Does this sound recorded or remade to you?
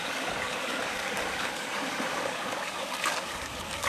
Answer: remade